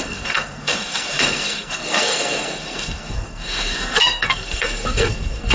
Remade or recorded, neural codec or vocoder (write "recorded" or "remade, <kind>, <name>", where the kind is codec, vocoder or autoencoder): remade, codec, SNAC